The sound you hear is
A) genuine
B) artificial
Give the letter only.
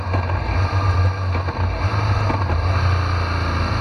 A